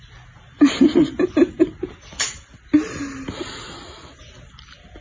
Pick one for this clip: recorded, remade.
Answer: recorded